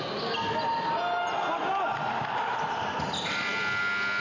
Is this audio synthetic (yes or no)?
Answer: no